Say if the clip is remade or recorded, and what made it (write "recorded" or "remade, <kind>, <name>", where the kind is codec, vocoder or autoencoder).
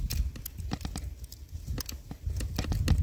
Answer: recorded